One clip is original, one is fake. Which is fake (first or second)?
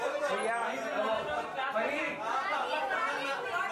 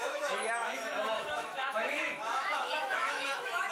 second